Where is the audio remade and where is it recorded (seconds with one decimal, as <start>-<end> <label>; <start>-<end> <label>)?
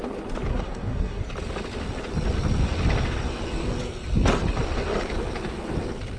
0.0-0.5 recorded; 0.5-1.2 remade; 1.2-6.2 recorded